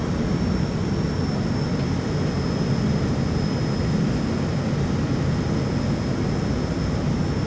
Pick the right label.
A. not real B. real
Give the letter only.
B